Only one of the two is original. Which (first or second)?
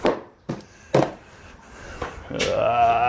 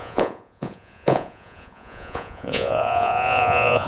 first